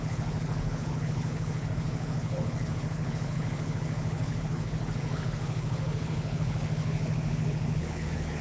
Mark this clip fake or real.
fake